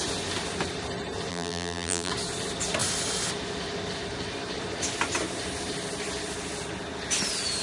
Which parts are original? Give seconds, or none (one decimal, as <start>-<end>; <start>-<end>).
0.0-1.3; 2.1-7.6